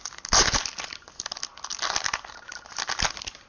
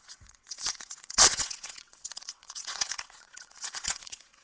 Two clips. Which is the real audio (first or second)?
first